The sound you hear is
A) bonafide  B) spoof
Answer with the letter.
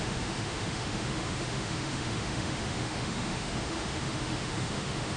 B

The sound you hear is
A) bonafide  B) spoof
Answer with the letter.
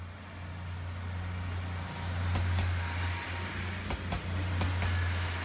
A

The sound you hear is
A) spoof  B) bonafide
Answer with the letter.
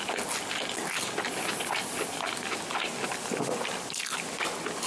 B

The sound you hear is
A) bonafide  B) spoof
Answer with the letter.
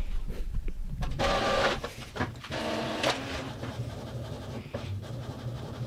B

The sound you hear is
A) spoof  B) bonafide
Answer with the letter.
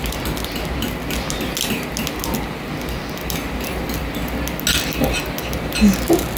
B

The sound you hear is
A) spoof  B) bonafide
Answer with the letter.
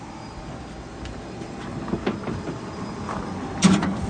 B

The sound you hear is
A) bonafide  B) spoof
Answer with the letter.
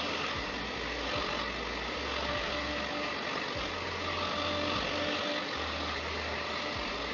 A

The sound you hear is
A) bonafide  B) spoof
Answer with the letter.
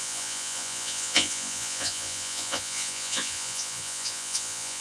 B